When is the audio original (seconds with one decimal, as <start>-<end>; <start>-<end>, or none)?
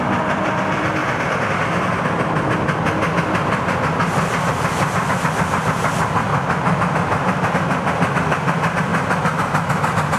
1.0-5.3; 6.3-7.5; 8.9-9.7